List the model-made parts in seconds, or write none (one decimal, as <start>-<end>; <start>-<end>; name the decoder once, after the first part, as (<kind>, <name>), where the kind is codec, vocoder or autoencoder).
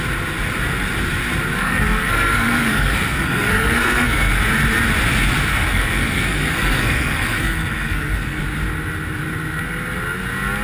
1.6-4.4 (codec, SNAC); 5.5-8.4